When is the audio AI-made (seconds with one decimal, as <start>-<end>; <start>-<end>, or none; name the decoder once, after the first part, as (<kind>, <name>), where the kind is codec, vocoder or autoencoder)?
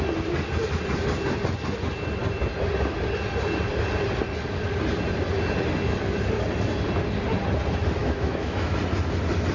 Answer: 8.0-8.8 (autoencoder, DAC-VAE)